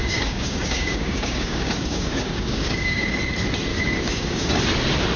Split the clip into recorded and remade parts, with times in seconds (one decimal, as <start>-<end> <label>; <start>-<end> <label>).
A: 0.0-3.1 remade; 3.1-3.7 recorded; 3.7-4.6 remade; 4.6-5.2 recorded